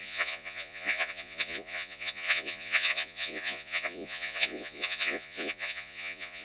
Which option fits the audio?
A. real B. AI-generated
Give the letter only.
B